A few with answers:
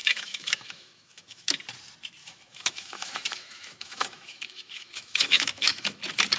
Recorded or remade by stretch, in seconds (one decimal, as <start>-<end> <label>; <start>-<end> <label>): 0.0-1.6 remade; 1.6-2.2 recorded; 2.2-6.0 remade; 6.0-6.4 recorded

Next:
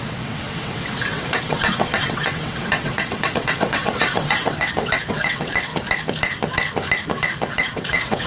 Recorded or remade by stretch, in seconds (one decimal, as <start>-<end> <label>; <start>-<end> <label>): 0.0-5.7 remade; 5.7-7.2 recorded; 7.2-8.3 remade

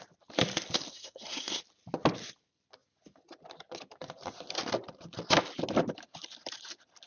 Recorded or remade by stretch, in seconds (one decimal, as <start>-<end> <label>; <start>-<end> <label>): 0.0-0.9 recorded; 0.9-1.6 remade; 1.6-7.1 recorded